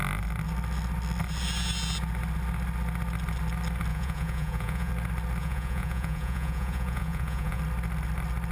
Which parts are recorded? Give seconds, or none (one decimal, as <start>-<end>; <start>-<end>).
0.0-3.9; 4.9-5.4; 7.6-8.5